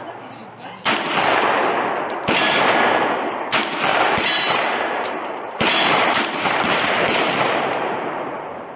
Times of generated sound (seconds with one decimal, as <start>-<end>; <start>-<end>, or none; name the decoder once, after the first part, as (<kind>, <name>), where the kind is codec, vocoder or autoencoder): 3.9-8.8 (vocoder, BigVGAN v2)